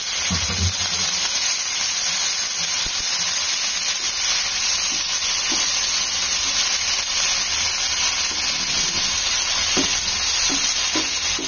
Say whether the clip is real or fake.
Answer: real